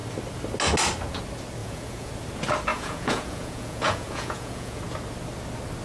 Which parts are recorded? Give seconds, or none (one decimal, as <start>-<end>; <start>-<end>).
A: 0.0-1.6; 2.1-2.7; 4.8-5.8